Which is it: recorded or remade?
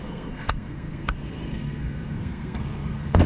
remade